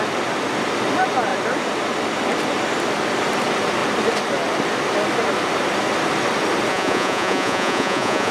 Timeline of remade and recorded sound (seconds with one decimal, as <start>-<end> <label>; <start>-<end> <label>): 0.0-6.7 recorded; 6.7-8.3 remade